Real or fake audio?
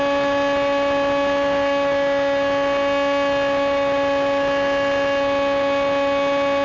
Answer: real